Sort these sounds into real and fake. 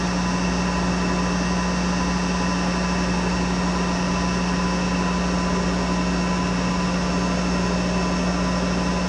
real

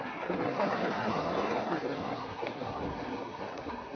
fake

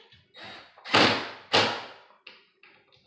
real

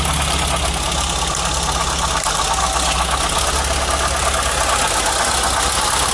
real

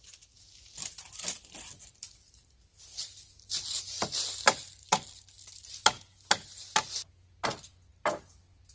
real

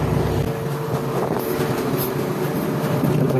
real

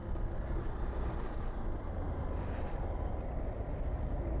real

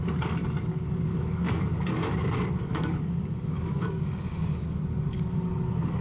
fake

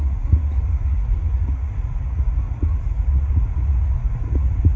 fake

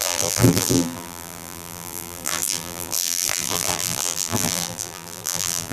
fake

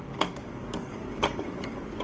fake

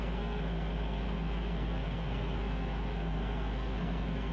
fake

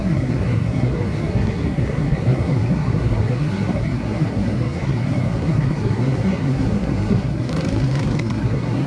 fake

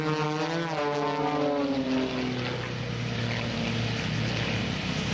real